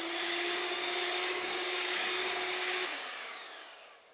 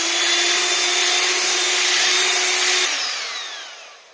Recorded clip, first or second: second